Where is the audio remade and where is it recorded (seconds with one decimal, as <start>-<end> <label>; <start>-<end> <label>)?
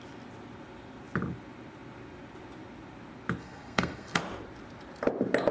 0.0-3.4 recorded; 3.4-4.2 remade; 4.2-5.5 recorded